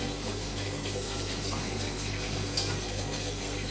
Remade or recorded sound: remade